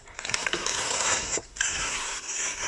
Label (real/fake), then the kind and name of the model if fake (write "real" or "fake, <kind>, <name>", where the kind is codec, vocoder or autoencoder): fake, codec, SNAC